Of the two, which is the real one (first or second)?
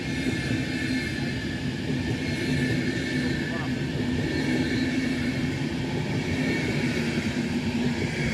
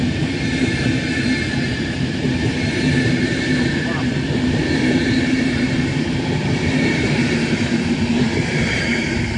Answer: first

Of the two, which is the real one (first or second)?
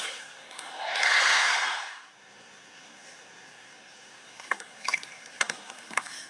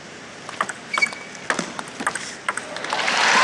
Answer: second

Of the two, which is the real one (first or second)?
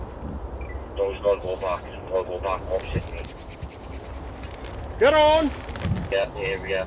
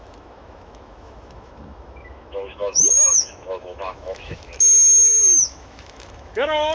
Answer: first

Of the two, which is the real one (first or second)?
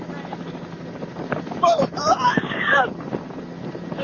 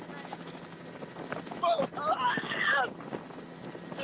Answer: second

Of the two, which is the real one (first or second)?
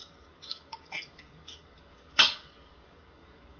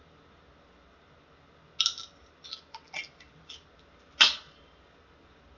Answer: second